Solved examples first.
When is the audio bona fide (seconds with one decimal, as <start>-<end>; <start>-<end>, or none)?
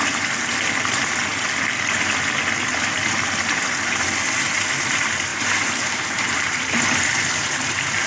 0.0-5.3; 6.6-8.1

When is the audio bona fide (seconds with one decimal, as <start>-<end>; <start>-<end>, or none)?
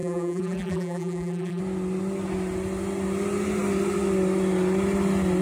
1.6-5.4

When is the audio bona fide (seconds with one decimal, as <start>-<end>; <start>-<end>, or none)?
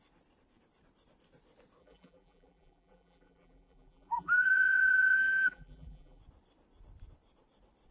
0.0-1.8; 6.2-7.9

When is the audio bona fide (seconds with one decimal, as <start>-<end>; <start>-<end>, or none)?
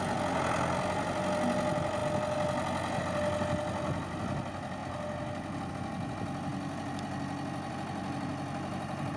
0.0-9.2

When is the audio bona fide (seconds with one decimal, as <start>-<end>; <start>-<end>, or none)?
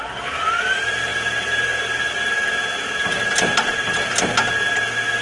0.0-5.2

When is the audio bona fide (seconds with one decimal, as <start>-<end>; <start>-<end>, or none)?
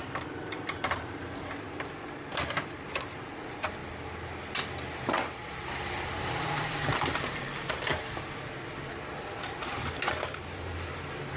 3.8-6.2; 7.9-10.4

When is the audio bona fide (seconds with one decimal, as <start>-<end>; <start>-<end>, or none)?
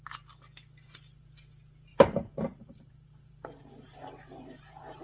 0.0-1.9